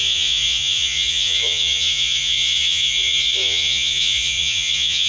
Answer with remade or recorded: remade